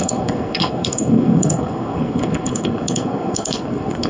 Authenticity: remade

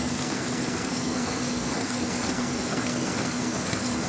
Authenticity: remade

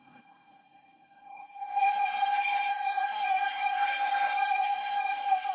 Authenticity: remade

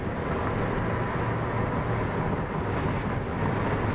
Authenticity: recorded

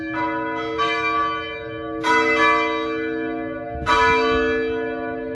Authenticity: recorded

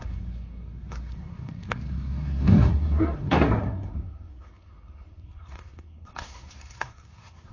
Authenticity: remade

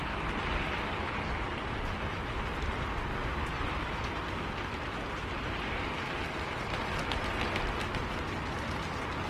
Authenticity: recorded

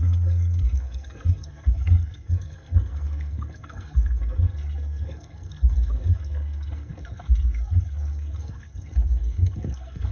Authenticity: remade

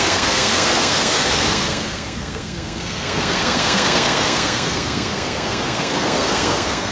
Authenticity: remade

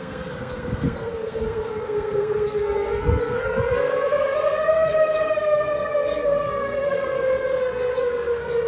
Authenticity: remade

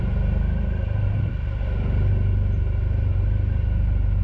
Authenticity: recorded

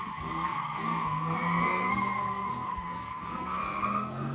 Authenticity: remade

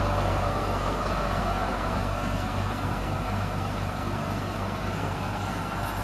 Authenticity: remade